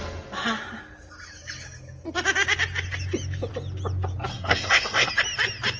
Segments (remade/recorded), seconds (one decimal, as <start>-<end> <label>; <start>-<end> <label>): 0.0-4.3 recorded; 4.3-5.1 remade; 5.1-5.8 recorded